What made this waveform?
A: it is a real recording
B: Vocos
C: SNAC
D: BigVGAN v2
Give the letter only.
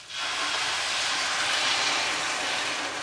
A